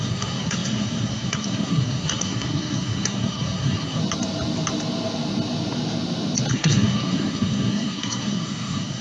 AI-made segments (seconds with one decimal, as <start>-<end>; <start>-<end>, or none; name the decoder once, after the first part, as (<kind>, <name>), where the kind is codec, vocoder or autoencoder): 0.0-4.0 (codec, SNAC); 6.5-9.0